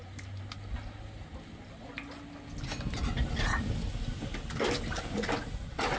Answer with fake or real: real